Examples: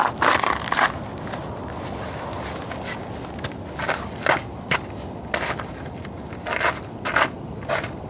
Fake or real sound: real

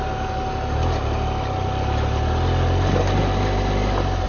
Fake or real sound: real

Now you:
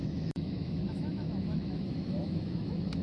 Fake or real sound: fake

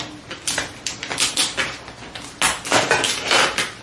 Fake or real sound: real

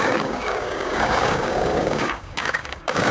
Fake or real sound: fake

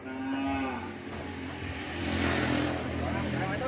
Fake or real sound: real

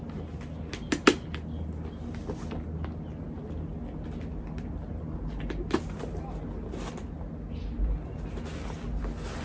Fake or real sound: real